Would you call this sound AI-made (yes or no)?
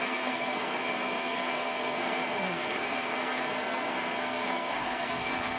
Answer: yes